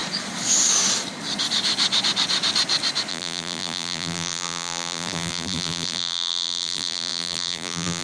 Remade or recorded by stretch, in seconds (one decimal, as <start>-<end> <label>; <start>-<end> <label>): 0.0-3.1 recorded; 3.1-8.0 remade